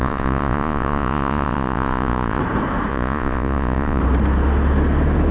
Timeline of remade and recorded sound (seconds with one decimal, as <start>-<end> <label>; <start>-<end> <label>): 0.0-2.4 remade; 2.4-2.9 recorded; 2.9-4.0 remade; 4.0-5.3 recorded